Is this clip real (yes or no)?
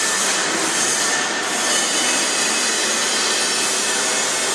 yes